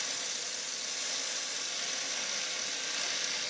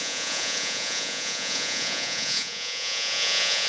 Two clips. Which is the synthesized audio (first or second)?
second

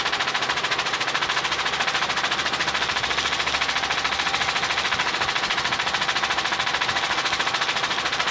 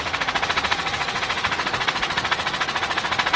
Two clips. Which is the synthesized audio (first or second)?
second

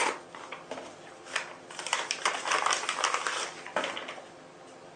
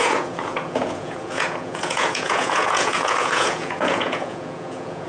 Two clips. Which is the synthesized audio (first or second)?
second